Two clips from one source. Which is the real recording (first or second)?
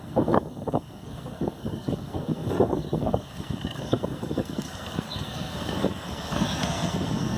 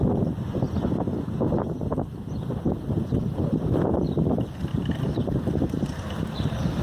second